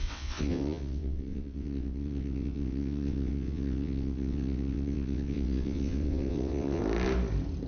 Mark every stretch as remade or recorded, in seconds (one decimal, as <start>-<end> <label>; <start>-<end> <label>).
0.0-6.8 remade; 6.8-7.7 recorded